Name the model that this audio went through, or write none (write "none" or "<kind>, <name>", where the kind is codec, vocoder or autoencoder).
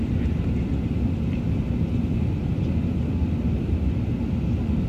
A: none